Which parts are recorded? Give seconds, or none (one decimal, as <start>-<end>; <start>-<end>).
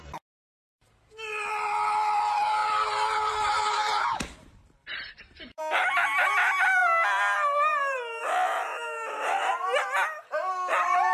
0.0-2.6; 5.6-6.8; 8.2-8.7; 9.4-11.1